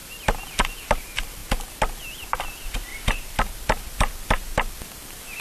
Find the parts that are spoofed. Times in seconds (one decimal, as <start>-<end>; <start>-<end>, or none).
1.0-1.4; 2.2-2.9; 4.5-5.4